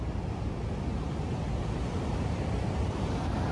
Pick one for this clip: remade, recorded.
recorded